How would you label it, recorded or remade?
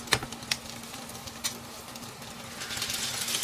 recorded